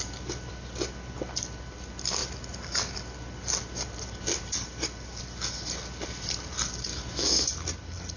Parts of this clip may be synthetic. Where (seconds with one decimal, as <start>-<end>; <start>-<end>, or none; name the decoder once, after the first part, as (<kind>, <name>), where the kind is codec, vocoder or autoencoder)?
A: 6.9-7.5 (autoencoder, DAC-VAE)

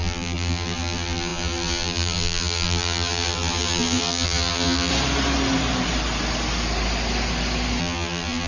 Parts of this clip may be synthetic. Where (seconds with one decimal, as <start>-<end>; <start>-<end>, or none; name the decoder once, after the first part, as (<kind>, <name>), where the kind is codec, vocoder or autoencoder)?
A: 0.0-4.9 (vocoder, BigVGAN v2); 7.8-8.5

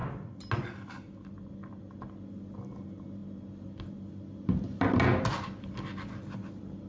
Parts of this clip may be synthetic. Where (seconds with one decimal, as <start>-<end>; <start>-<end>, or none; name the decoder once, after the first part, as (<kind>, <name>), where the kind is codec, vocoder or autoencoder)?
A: none

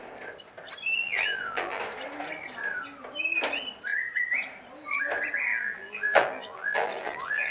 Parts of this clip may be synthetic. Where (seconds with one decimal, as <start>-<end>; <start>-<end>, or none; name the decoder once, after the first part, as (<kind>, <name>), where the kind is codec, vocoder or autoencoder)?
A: 1.0-1.8 (vocoder, BigVGAN v2); 5.5-7.5